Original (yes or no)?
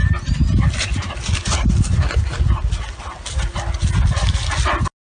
yes